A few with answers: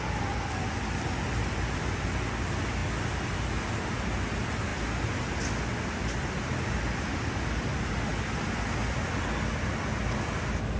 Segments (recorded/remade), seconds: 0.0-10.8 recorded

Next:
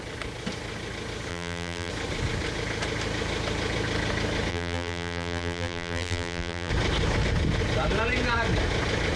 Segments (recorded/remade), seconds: 0.0-1.3 recorded; 1.3-1.9 remade; 1.9-4.5 recorded; 4.5-6.7 remade; 6.7-9.2 recorded